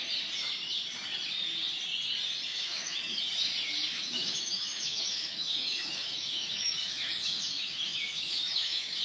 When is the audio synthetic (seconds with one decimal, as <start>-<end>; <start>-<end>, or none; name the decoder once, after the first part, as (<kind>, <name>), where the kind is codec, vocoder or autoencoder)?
2.5-3.2 (autoencoder, DAC-VAE); 3.9-9.0